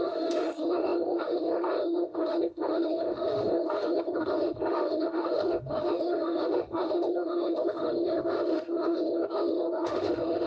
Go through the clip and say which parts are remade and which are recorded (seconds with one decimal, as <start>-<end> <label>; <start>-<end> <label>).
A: 0.0-10.5 remade